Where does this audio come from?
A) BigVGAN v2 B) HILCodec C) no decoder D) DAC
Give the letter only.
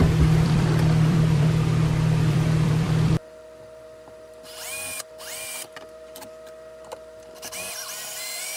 A